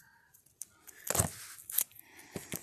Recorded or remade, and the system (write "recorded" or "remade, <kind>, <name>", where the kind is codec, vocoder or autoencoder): recorded